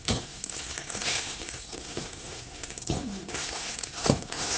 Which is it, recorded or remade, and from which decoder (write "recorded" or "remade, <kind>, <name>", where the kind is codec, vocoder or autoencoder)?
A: remade, codec, SNAC